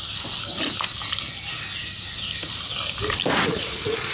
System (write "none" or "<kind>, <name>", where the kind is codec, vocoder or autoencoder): none